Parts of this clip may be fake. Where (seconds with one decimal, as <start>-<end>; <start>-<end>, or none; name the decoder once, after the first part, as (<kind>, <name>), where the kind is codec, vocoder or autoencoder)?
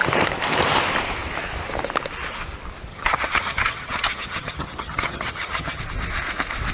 2.9-5.8 (vocoder, HiFi-GAN)